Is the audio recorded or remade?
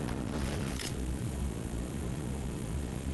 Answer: remade